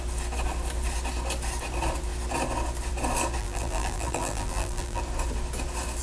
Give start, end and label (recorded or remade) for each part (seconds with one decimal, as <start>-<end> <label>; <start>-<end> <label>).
0.0-3.4 recorded; 3.4-5.0 remade; 5.0-6.0 recorded